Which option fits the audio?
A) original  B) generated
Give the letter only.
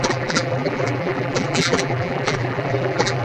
B